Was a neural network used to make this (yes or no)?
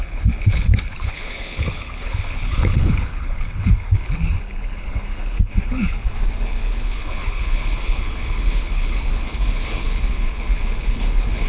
yes